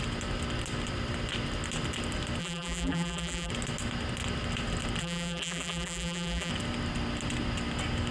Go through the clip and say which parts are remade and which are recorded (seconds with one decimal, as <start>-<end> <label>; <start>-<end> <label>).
0.0-2.4 recorded; 2.4-3.5 remade; 3.5-5.0 recorded; 5.0-6.5 remade; 6.5-8.1 recorded